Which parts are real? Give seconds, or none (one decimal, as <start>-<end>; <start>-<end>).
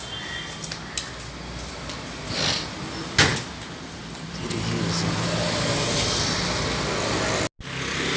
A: 0.0-3.3; 4.0-8.2